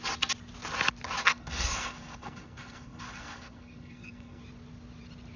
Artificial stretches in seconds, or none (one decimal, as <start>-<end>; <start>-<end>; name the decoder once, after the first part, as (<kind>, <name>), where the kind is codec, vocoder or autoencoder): 1.2-4.4 (codec, SNAC)